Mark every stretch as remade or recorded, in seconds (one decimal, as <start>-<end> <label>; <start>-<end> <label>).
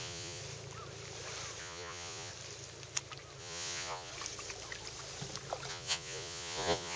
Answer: 0.0-0.4 remade; 0.4-1.6 recorded; 1.6-2.3 remade; 2.3-3.4 recorded; 3.4-4.1 remade; 4.1-5.7 recorded; 5.7-7.0 remade